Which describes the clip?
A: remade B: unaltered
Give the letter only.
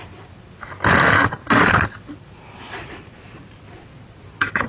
B